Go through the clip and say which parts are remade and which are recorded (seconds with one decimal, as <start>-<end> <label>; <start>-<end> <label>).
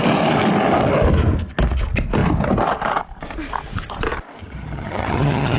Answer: 0.0-4.4 recorded; 4.4-5.6 remade